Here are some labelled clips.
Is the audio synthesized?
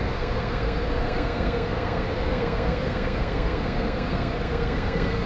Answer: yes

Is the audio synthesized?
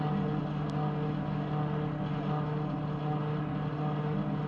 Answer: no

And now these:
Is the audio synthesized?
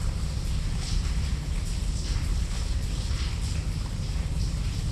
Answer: no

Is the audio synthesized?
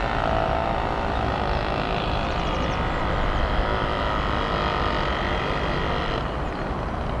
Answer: no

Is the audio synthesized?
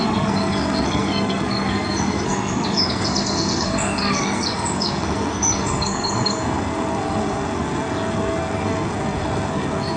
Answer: yes